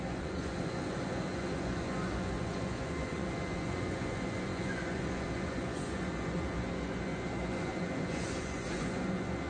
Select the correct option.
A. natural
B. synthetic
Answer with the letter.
B